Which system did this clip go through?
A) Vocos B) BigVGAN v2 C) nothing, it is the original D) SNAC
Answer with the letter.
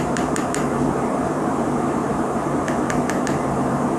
B